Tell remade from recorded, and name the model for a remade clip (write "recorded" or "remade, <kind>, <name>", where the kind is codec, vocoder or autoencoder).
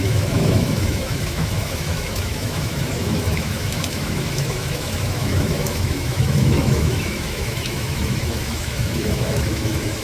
remade, autoencoder, DAC-VAE